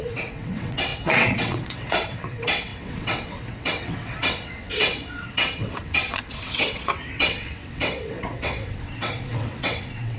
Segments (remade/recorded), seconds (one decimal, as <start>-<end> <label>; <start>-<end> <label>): 0.0-10.2 remade